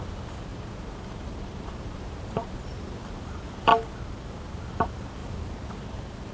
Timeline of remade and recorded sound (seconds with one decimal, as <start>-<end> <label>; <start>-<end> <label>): 0.0-0.5 recorded; 0.5-3.0 remade; 3.0-6.3 recorded